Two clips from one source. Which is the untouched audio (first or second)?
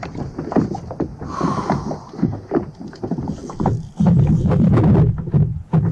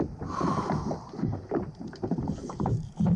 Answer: first